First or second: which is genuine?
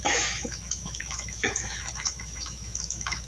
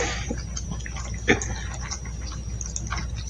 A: second